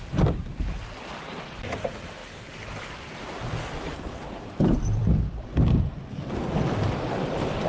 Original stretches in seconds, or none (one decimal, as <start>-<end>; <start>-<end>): 2.2-3.7; 5.5-7.1